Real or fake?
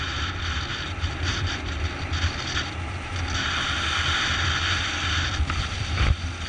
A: real